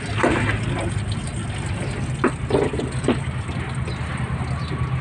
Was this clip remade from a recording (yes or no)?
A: no